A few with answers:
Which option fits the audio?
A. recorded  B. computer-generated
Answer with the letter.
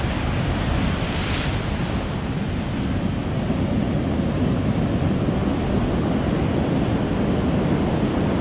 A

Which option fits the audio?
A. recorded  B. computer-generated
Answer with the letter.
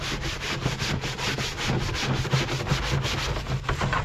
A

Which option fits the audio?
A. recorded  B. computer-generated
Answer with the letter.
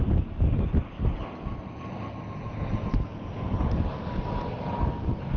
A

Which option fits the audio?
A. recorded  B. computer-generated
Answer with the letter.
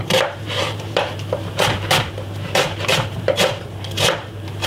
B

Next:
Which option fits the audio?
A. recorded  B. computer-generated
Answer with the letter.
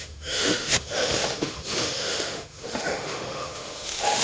B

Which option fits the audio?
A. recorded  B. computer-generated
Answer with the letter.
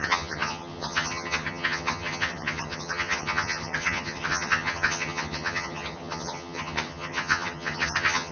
B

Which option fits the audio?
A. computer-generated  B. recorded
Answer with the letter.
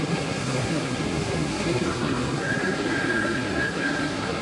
A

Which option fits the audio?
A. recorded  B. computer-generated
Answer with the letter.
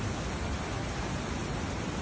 A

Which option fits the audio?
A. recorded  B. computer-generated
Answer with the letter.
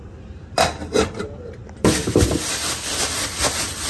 B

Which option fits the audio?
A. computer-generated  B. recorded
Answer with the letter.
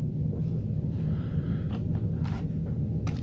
B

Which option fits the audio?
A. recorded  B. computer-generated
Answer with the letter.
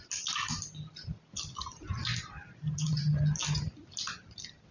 A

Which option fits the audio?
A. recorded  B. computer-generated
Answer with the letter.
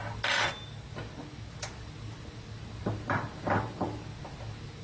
A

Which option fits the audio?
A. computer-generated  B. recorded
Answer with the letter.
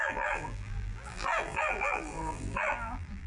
A